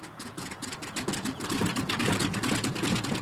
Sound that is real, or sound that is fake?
fake